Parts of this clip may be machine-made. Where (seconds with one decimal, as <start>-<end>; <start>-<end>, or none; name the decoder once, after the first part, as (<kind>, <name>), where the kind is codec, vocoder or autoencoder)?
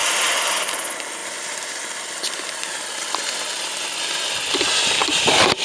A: 1.2-4.6 (vocoder, BigVGAN v2); 5.0-5.6